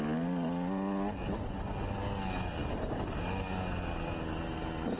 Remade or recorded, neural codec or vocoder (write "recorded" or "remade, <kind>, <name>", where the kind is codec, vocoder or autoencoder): recorded